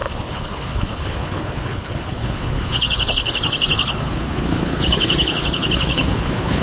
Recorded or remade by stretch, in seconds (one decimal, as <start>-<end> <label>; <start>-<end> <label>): 0.0-6.6 remade